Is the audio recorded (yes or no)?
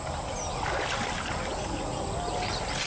yes